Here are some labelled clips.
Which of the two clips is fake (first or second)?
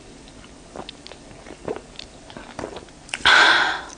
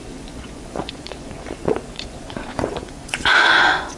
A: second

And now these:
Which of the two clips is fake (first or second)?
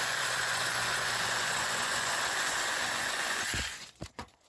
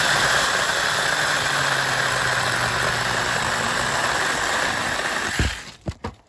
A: first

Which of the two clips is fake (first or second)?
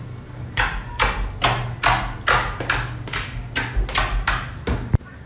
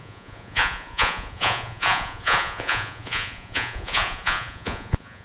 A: second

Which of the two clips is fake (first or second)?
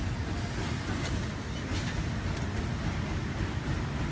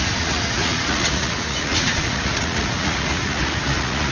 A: second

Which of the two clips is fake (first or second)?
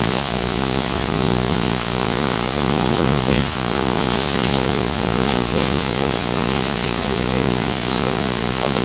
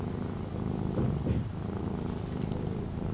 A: first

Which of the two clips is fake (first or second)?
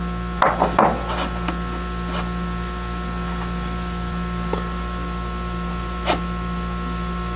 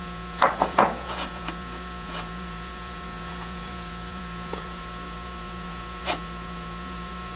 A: second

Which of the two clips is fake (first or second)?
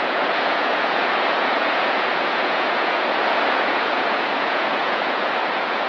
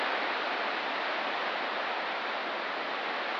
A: first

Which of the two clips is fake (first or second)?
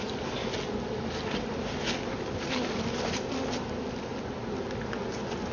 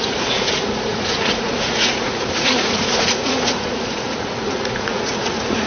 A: second